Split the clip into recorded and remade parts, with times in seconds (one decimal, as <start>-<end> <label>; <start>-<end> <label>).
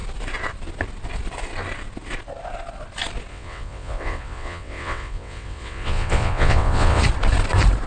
0.0-3.3 recorded; 3.3-7.0 remade; 7.0-7.9 recorded